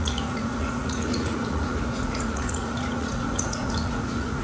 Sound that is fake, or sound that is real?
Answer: fake